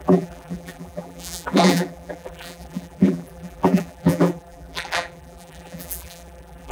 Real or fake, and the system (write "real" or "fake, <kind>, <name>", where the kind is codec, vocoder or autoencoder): fake, vocoder, BigVGAN v2